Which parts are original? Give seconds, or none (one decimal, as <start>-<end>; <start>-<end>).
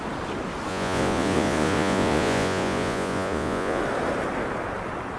0.0-0.7; 3.8-5.2